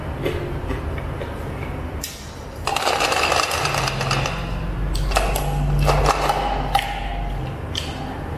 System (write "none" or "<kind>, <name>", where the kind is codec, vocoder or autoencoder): none